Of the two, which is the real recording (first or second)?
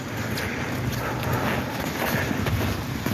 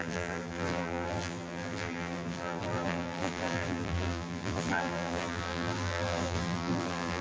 first